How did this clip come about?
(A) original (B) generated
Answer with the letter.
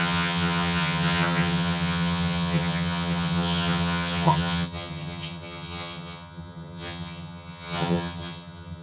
B